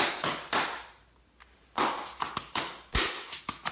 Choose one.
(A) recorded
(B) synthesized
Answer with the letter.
A